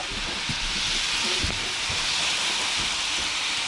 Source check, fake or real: real